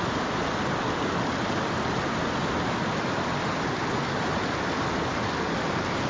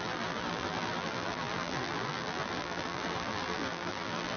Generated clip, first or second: second